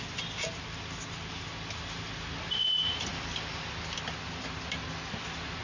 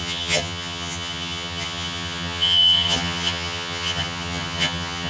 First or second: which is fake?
second